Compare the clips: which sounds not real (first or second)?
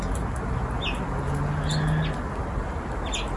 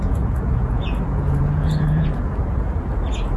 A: second